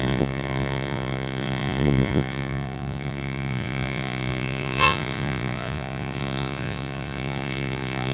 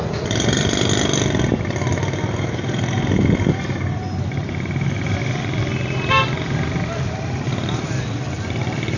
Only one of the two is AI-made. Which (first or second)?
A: first